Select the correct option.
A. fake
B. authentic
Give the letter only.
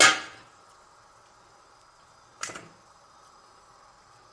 B